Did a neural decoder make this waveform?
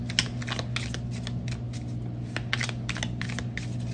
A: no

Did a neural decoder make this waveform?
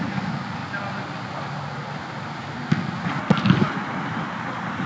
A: no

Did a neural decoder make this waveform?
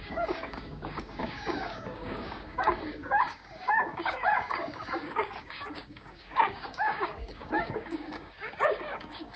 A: yes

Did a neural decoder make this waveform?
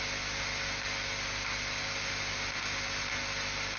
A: no